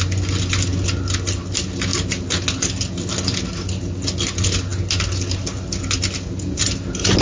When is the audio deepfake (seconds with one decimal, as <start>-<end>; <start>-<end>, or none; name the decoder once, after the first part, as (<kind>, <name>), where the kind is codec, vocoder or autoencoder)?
none